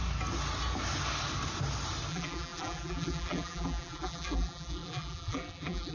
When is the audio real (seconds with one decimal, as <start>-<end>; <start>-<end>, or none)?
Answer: 0.0-2.1